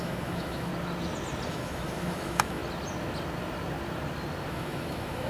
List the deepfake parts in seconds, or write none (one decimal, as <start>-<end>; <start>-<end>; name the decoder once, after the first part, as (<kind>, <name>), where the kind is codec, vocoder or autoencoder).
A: 0.0-0.7 (autoencoder, DAC-VAE); 1.5-2.6; 4.5-5.3